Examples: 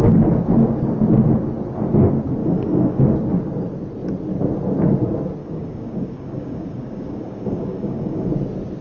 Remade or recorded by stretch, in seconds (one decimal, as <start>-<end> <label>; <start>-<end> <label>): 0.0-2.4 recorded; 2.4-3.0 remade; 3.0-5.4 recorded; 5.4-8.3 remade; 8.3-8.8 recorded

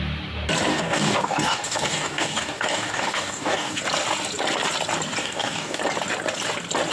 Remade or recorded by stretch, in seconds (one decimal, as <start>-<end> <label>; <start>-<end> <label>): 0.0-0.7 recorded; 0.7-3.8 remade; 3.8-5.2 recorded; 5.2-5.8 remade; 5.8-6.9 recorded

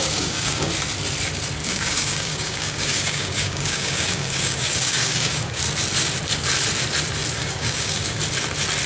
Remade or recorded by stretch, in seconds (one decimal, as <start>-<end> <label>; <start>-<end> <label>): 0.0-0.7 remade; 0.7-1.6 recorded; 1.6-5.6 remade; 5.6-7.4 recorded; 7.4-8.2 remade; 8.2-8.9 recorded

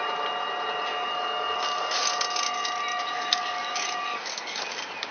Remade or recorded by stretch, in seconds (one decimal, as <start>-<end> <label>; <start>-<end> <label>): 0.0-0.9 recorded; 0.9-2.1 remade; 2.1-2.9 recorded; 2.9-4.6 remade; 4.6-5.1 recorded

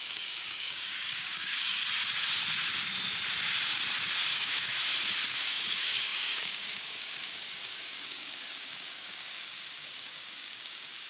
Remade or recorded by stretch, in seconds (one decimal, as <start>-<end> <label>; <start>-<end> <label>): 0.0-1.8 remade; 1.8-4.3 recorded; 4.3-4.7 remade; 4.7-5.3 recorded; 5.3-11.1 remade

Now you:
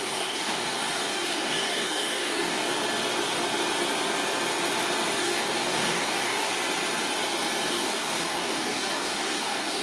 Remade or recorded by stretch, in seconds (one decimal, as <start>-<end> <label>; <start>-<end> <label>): 0.0-2.7 remade; 2.7-5.2 recorded; 5.2-6.5 remade; 6.5-7.7 recorded; 7.7-9.8 remade

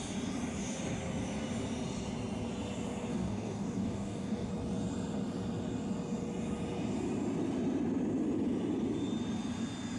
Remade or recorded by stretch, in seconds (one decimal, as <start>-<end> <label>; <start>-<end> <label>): 0.0-3.1 recorded; 3.1-4.5 remade; 4.5-10.0 recorded

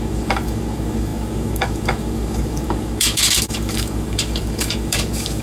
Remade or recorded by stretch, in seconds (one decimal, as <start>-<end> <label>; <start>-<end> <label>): 0.0-5.4 remade